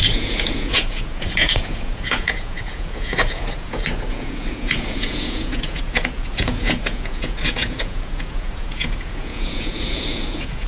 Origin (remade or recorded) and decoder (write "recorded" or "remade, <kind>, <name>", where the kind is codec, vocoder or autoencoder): remade, vocoder, Vocos